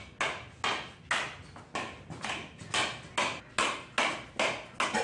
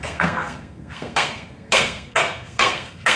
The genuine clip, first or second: first